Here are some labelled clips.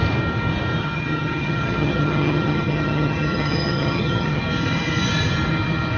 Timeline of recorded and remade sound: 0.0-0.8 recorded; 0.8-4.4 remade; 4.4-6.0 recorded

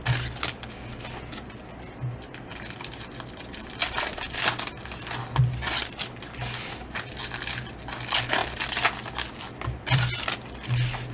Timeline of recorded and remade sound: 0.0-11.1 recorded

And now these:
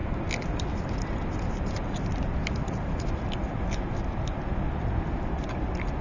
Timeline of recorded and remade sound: 0.0-6.0 recorded